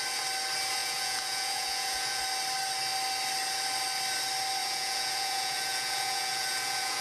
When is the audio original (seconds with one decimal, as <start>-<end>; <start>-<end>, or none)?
0.0-0.8; 2.2-4.6